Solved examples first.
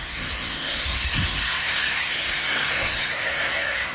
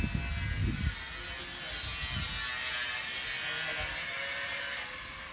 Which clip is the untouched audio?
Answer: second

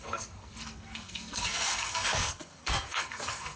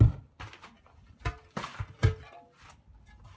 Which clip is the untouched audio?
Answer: second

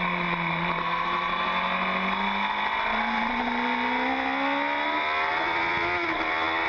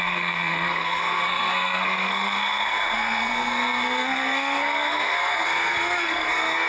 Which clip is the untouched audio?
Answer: first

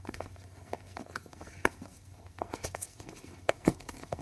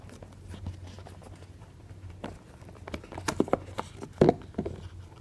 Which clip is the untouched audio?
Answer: second